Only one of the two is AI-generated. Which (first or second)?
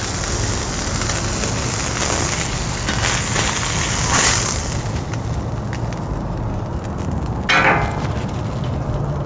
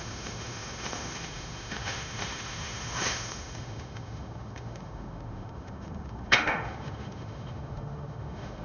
second